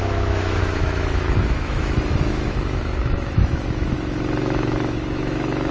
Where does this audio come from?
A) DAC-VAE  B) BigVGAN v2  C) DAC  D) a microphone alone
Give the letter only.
A